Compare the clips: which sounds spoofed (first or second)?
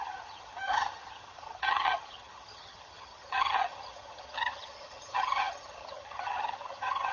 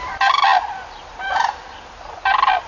first